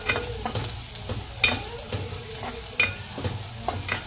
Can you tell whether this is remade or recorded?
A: recorded